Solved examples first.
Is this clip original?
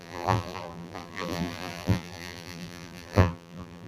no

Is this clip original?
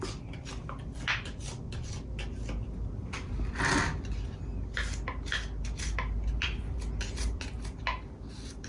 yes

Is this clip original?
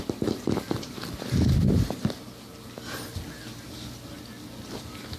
yes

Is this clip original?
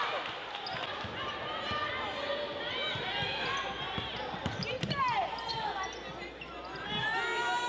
yes